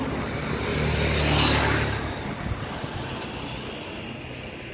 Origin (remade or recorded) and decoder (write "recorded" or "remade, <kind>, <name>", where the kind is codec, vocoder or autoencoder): recorded